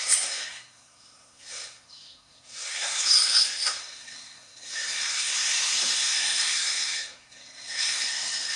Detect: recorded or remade remade